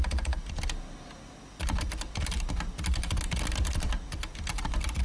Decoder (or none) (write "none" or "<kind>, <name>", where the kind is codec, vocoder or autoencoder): none